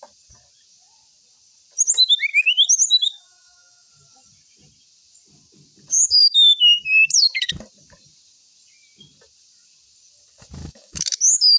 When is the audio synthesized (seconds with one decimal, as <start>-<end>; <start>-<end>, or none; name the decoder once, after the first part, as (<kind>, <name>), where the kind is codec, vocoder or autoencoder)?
2.3-3.9 (autoencoder, DAC-VAE); 6.2-7.5; 10.6-11.2